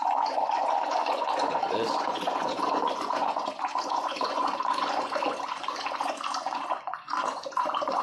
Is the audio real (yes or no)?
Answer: no